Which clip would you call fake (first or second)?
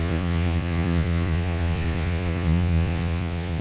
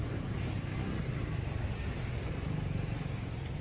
first